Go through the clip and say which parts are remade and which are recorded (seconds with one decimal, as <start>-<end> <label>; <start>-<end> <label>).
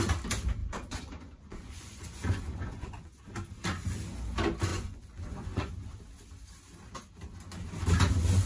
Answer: 0.0-0.6 recorded; 0.6-3.2 remade; 3.2-4.7 recorded; 4.7-5.7 remade; 5.7-8.5 recorded